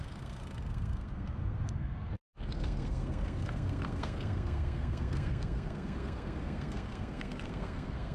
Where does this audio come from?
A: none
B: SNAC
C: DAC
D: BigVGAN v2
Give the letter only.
B